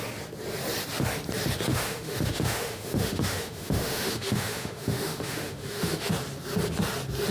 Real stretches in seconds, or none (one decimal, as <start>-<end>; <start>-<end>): 0.0-1.7; 6.1-7.3